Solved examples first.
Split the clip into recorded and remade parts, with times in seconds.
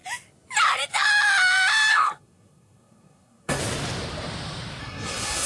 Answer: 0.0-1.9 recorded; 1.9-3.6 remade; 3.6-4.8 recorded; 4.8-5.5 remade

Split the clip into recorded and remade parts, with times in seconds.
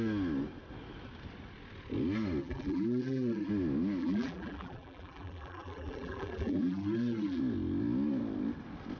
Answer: 0.0-2.4 recorded; 2.4-3.5 remade; 3.5-4.0 recorded; 4.0-7.4 remade; 7.4-9.0 recorded